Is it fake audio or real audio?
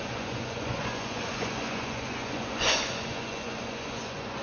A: fake